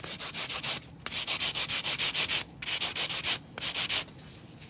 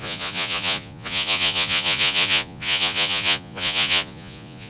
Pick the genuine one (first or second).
first